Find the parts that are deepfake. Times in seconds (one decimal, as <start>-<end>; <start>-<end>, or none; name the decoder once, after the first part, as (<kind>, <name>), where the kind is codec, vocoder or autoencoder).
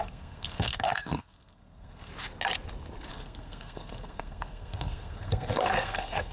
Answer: 0.0-2.1 (codec, SNAC); 3.1-6.3